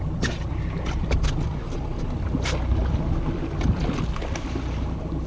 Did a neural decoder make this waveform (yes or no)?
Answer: no